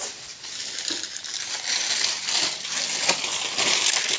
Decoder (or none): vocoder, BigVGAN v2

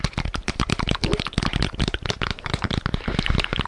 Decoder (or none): none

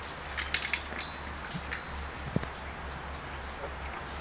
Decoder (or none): none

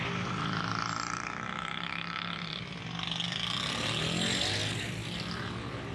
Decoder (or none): none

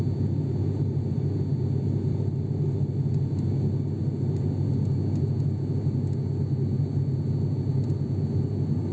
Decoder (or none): none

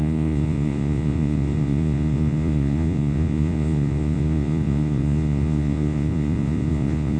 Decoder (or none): vocoder, Vocos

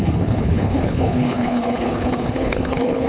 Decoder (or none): codec, HILCodec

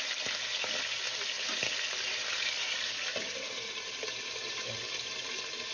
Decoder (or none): none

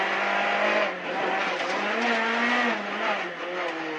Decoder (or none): none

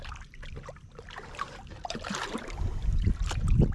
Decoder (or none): vocoder, BigVGAN v2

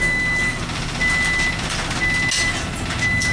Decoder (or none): none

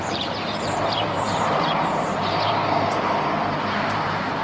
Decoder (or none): vocoder, BigVGAN v2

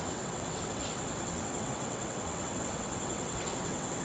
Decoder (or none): vocoder, WaveNeXt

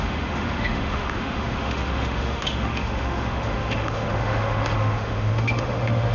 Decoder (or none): autoencoder, DAC-VAE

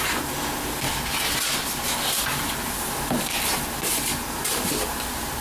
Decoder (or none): none